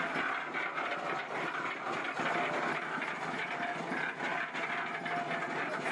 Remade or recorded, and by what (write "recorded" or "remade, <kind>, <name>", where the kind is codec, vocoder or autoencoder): recorded